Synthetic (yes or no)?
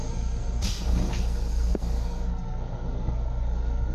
yes